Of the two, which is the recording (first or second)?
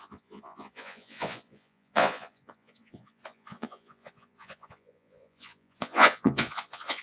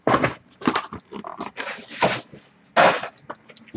second